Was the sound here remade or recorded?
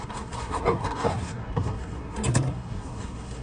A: remade